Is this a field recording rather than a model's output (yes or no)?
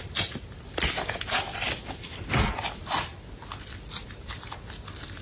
yes